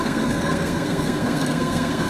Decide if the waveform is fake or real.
fake